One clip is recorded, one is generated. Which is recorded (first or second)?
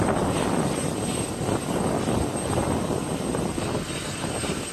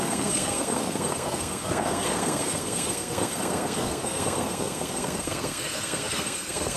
first